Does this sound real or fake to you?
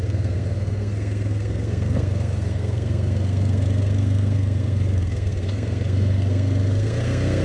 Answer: fake